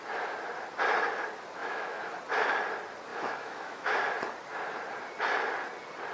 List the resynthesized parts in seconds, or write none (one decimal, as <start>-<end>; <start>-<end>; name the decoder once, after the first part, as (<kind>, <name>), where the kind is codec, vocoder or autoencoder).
1.6-2.1 (autoencoder, DAC-VAE); 3.1-4.0